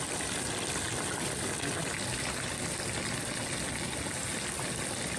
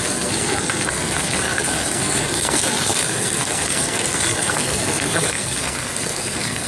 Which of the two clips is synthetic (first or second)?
second